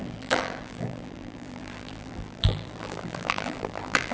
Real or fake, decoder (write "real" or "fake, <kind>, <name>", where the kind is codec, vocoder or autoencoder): fake, vocoder, BigVGAN v2